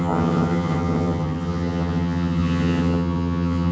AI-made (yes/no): yes